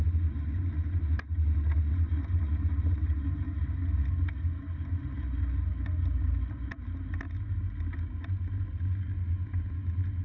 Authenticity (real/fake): real